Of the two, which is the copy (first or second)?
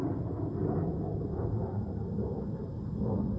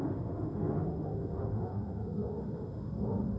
second